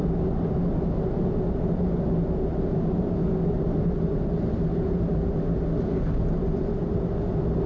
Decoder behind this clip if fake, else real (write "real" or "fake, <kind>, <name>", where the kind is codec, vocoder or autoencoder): real